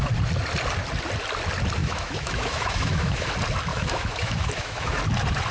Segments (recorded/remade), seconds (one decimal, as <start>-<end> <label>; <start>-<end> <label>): 0.0-1.8 recorded; 1.8-3.3 remade; 3.3-3.7 recorded; 3.7-5.0 remade; 5.0-5.5 recorded